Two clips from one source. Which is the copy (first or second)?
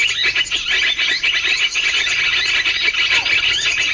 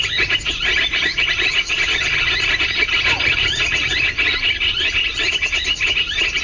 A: second